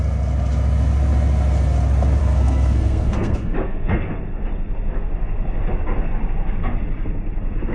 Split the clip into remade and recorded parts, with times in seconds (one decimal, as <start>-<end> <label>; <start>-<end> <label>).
0.0-2.2 recorded; 2.2-4.1 remade; 4.1-7.7 recorded